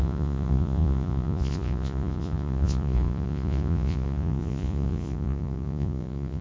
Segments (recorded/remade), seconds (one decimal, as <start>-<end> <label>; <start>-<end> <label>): 0.0-6.4 remade